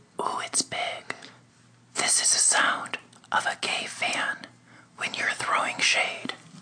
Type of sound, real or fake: real